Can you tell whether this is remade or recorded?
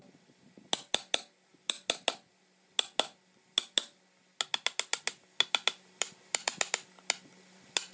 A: recorded